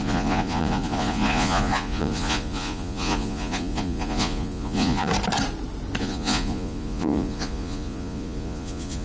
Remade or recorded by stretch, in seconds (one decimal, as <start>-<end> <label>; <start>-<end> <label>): 0.0-5.1 remade; 5.1-6.0 recorded; 6.0-9.0 remade